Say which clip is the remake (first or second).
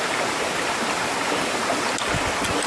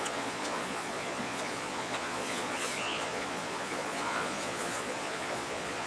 second